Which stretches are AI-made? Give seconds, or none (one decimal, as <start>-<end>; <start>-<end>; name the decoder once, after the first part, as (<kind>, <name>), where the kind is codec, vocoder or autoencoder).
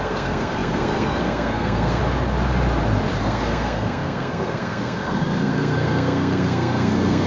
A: 0.0-2.0 (codec, SNAC); 3.2-7.3